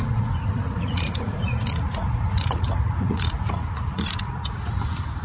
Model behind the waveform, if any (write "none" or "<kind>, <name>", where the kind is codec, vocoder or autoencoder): vocoder, Vocos